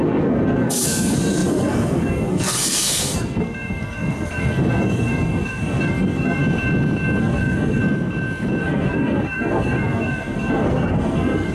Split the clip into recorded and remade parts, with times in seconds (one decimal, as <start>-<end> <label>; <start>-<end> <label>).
0.0-6.4 remade; 6.4-7.2 recorded; 7.2-7.8 remade; 7.8-8.6 recorded; 8.6-11.5 remade

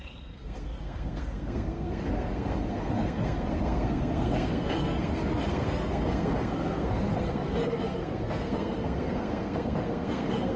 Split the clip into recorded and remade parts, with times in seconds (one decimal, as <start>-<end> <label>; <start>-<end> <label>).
0.0-10.6 remade

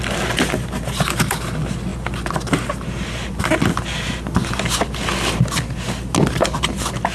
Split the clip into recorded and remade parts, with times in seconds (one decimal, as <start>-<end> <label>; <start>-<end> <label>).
0.0-7.1 recorded

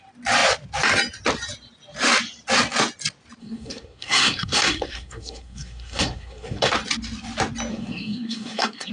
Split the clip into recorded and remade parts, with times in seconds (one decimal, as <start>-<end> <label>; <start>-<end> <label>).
0.0-3.4 recorded; 3.4-6.7 remade; 6.7-7.7 recorded; 7.7-8.9 remade

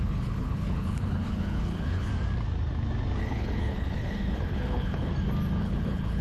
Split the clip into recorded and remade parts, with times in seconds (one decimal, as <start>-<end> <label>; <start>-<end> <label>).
0.0-2.1 remade; 2.1-3.2 recorded; 3.2-5.1 remade; 5.1-5.6 recorded; 5.6-6.2 remade